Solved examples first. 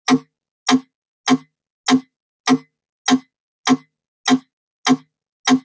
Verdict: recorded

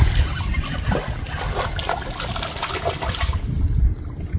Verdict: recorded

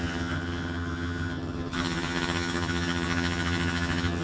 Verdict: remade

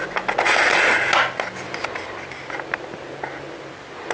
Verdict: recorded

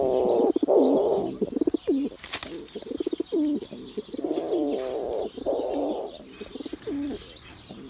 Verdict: recorded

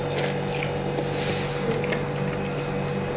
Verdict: recorded